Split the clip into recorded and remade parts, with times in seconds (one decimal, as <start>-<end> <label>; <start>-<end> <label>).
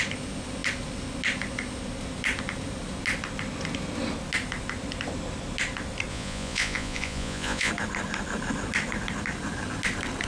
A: 0.0-6.1 recorded; 6.1-7.7 remade; 7.7-10.3 recorded